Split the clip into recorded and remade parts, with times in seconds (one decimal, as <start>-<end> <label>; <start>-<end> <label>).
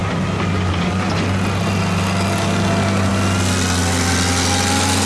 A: 0.0-5.1 recorded